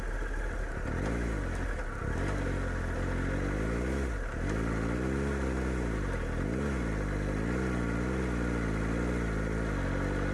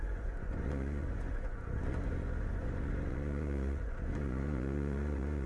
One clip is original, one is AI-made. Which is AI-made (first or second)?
second